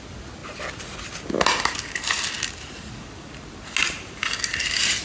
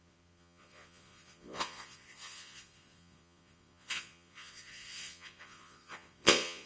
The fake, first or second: second